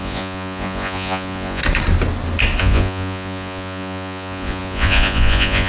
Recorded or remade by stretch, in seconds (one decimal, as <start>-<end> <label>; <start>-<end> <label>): 0.0-1.6 remade; 1.6-2.6 recorded; 2.6-5.7 remade